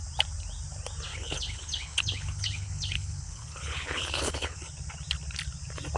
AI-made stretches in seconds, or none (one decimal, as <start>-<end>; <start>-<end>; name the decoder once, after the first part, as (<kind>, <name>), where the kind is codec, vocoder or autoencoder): 1.1-4.7 (codec, HILCodec)